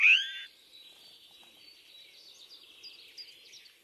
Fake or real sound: real